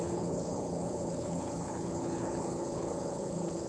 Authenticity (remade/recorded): remade